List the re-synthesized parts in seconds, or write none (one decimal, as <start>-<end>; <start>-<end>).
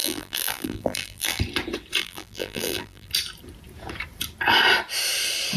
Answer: 0.0-1.4; 2.0-3.1